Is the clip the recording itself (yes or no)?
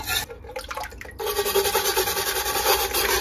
yes